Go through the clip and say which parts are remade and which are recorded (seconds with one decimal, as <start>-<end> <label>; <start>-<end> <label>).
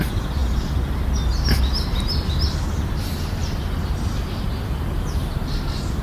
0.0-6.0 recorded